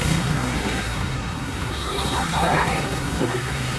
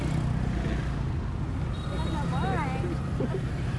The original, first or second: second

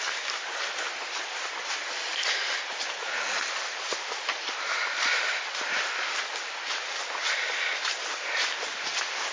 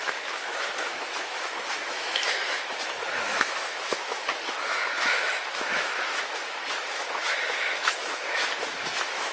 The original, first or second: first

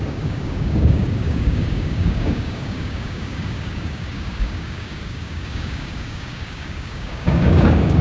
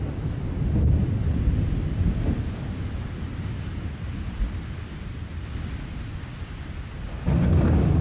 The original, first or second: second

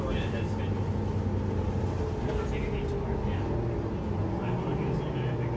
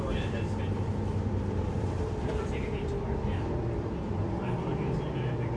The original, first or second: first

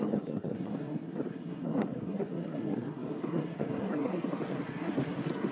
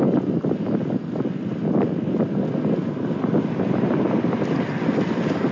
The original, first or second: second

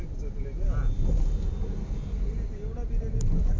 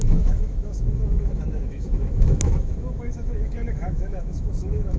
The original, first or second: first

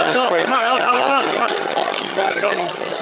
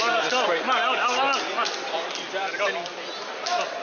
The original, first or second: second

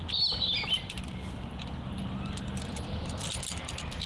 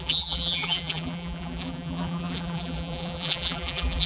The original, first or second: first